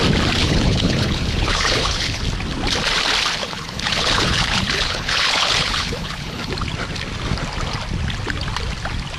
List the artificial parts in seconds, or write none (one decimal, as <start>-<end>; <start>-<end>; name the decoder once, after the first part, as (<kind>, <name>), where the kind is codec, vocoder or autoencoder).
0.4-2.2 (codec, HILCodec); 3.4-6.5